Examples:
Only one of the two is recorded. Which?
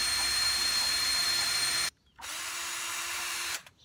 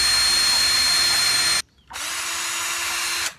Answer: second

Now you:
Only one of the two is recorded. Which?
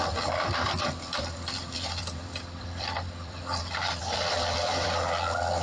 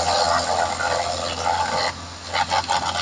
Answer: second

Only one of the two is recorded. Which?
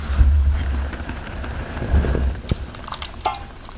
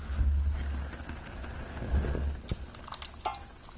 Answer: second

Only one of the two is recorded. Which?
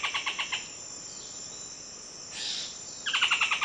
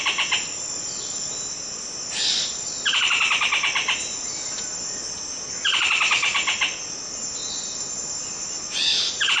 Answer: second